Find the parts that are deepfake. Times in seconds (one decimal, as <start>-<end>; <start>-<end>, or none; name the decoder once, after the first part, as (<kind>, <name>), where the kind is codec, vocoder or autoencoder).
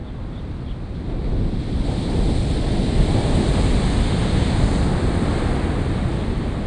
none